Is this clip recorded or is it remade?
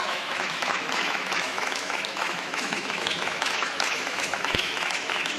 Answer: remade